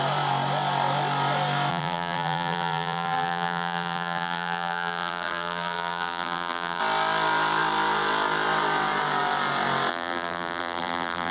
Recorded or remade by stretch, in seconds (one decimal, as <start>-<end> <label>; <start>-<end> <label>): 0.0-1.7 recorded; 1.7-6.8 remade; 6.8-9.9 recorded; 9.9-11.3 remade